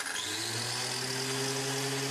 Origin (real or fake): real